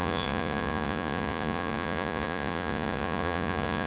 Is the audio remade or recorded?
remade